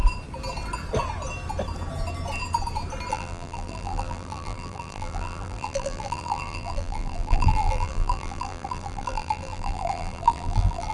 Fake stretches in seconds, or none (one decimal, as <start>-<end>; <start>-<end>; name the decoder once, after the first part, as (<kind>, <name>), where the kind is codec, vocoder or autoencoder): 3.1-10.9 (vocoder, BigVGAN v2)